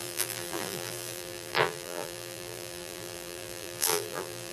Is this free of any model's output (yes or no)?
no